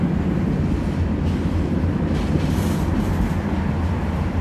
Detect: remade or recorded recorded